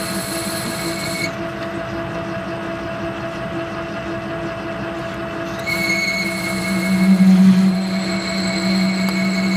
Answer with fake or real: real